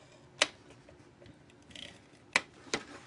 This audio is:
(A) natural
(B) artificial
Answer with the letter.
A